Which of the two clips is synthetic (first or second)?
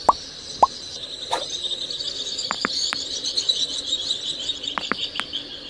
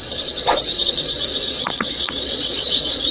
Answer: second